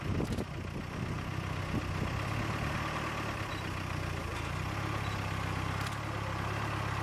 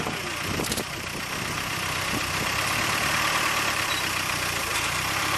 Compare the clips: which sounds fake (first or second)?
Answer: second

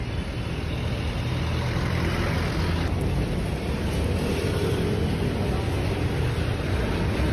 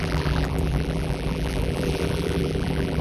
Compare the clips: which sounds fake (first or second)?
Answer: second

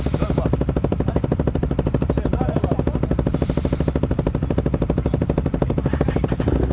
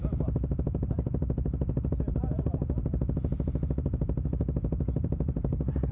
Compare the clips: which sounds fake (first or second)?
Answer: first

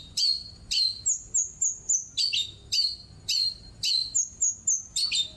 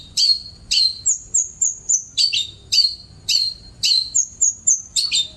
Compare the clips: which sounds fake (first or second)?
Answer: second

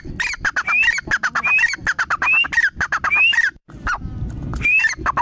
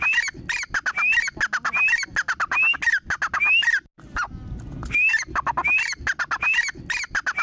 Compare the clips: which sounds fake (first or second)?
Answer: first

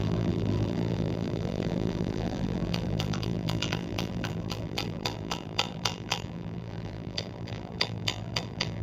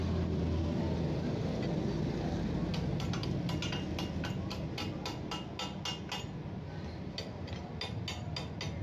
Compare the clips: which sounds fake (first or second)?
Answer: first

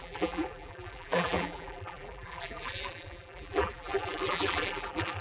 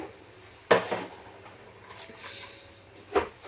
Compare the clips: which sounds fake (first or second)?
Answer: first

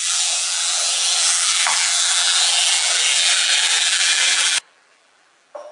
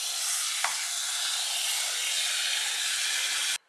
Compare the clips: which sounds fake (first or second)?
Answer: first